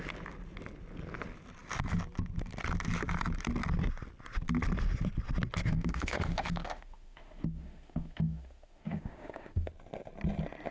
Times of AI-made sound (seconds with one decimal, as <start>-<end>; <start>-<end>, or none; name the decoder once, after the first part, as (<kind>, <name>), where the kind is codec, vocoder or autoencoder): 5.7-9.7 (autoencoder, DAC-VAE)